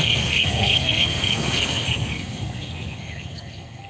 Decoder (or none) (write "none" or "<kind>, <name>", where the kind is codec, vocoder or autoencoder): codec, SNAC